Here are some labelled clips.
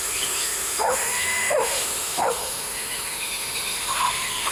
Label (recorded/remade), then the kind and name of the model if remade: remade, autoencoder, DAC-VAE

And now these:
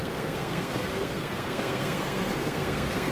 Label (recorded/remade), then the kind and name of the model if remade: remade, codec, SNAC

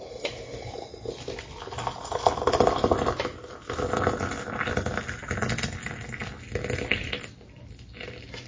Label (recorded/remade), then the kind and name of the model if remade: recorded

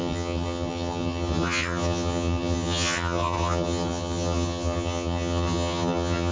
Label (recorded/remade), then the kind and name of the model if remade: remade, vocoder, HiFi-GAN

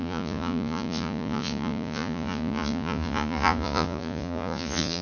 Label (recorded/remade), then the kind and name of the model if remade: remade, vocoder, Vocos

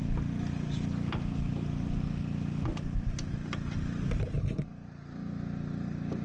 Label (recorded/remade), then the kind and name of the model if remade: remade, vocoder, BigVGAN v2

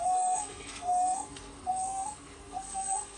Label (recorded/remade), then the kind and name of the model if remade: remade, codec, SNAC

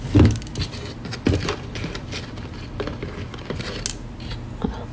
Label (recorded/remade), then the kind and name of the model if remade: recorded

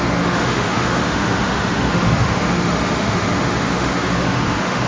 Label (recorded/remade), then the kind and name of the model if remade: remade, autoencoder, DAC-VAE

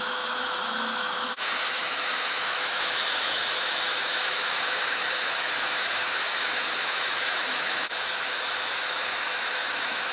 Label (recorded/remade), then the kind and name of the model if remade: remade, autoencoder, DAC-VAE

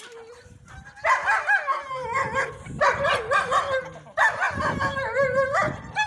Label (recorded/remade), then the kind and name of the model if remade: recorded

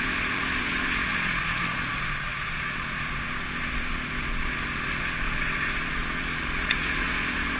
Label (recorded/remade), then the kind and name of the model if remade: remade, vocoder, Vocos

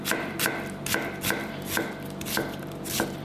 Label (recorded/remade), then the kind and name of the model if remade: recorded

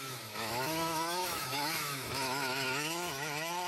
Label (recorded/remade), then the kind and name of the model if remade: remade, autoencoder, DAC-VAE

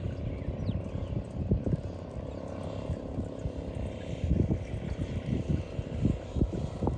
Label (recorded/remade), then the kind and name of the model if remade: recorded